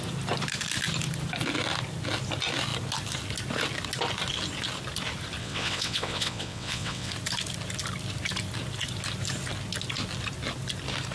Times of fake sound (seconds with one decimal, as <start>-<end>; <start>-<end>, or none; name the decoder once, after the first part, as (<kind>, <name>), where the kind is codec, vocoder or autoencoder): 5.4-7.1 (vocoder, WaveNeXt)